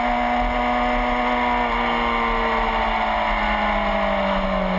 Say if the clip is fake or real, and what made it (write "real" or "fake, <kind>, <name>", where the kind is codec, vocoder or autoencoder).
real